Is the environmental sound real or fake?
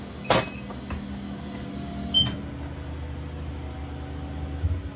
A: real